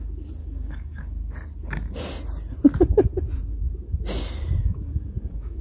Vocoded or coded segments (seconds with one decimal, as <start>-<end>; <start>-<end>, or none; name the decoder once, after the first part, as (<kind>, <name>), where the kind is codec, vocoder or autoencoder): 0.4-1.2 (codec, DAC); 4.6-5.6